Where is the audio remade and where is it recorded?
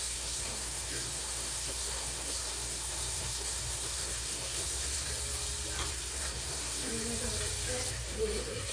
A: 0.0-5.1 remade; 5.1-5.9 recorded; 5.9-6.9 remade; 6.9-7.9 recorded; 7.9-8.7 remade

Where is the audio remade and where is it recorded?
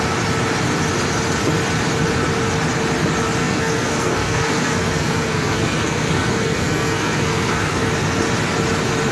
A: 0.0-3.4 recorded; 3.4-7.9 remade; 7.9-9.1 recorded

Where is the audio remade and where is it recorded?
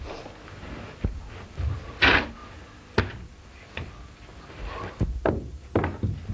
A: 0.0-6.3 recorded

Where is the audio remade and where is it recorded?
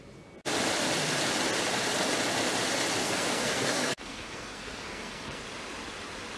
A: 0.0-3.0 recorded; 3.0-5.4 remade; 5.4-6.4 recorded